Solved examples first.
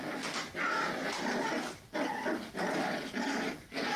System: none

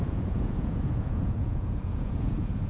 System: vocoder, Vocos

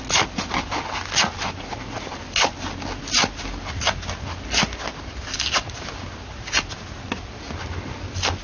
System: none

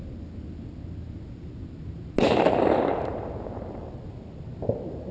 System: none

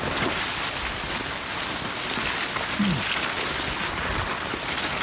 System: none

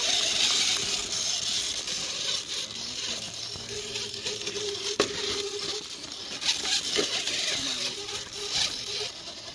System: none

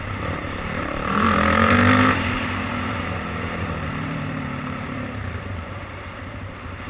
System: vocoder, BigVGAN v2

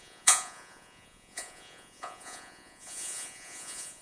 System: vocoder, Vocos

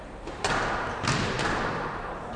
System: vocoder, BigVGAN v2